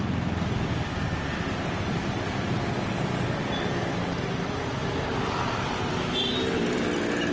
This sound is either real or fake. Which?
real